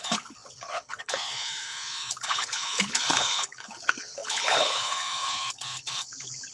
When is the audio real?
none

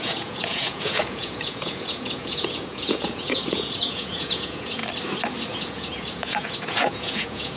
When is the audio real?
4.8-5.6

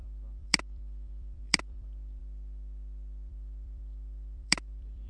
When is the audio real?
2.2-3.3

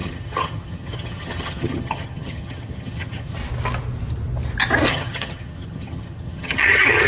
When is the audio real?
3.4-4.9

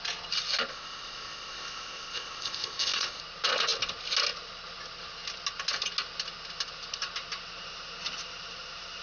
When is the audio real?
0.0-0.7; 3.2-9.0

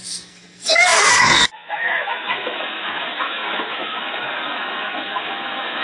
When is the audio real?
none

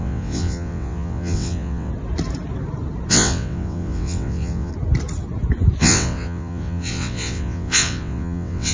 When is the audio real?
1.9-3.1; 4.7-5.8

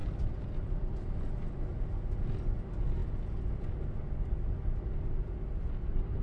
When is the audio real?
0.0-6.2